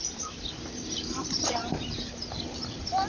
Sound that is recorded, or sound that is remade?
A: remade